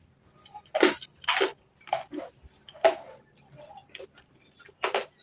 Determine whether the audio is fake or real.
real